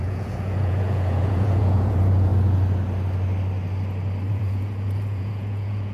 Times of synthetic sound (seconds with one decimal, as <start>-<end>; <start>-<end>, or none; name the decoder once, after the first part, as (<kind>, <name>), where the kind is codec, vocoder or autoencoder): 0.0-2.3 (vocoder, Vocos); 4.3-5.9